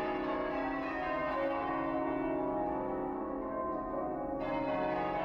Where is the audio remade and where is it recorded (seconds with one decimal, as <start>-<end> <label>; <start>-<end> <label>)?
0.0-5.2 recorded